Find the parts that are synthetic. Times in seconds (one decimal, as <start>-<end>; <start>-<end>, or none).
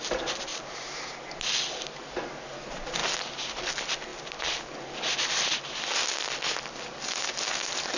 0.5-1.3